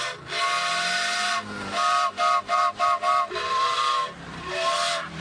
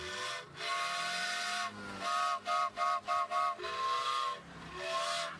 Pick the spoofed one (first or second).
first